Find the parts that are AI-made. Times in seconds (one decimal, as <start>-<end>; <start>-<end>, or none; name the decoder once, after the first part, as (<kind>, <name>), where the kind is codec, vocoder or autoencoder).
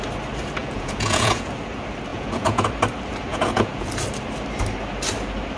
0.6-1.5 (vocoder, Vocos); 2.1-2.7; 3.3-3.9